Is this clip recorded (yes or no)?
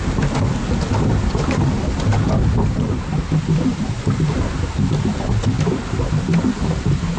yes